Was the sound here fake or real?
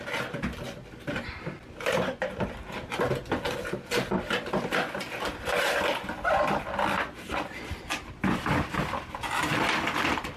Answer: real